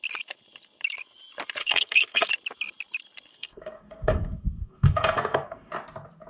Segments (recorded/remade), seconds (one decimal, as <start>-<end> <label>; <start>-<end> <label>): 0.0-1.6 recorded; 1.6-2.3 remade; 2.3-3.3 recorded; 3.3-5.7 remade; 5.7-6.3 recorded